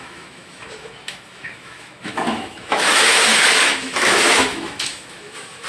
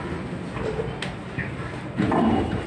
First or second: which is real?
second